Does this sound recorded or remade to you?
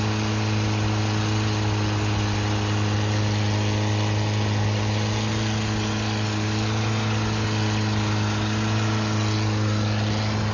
recorded